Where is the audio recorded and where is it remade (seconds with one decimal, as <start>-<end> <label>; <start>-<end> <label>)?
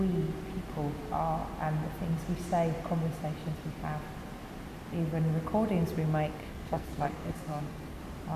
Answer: 0.0-6.4 recorded; 6.4-8.0 remade; 8.0-8.4 recorded